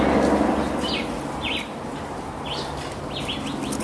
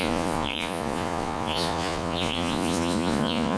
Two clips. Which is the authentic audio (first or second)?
first